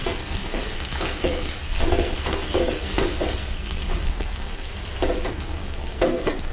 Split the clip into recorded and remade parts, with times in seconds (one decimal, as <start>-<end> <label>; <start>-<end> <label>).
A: 0.0-4.7 remade; 4.7-5.3 recorded; 5.3-6.5 remade